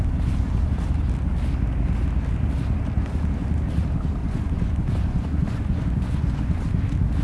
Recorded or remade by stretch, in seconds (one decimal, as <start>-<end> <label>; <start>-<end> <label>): 0.0-4.2 recorded; 4.2-6.6 remade; 6.6-7.2 recorded